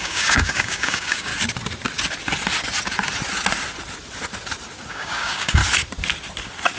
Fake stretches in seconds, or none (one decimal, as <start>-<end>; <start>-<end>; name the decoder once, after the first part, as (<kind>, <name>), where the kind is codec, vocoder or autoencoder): 0.0-1.3 (codec, DAC); 4.9-5.6